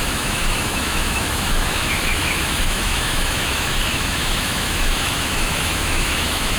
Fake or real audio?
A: fake